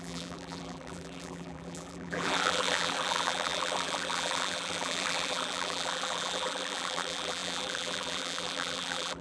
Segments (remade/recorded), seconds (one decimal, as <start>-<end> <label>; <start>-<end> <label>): 0.0-9.2 remade